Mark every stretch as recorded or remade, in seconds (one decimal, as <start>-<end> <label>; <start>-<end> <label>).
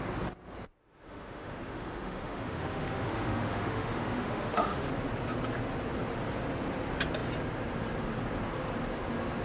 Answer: 0.0-0.8 recorded; 0.8-4.9 remade; 4.9-9.4 recorded